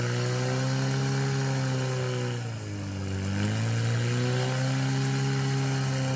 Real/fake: real